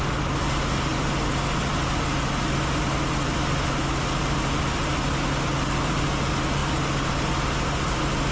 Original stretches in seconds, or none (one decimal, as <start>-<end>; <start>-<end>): 0.0-8.3